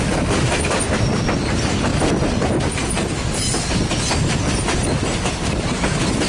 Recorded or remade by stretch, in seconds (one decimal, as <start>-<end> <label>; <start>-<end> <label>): 0.0-6.3 recorded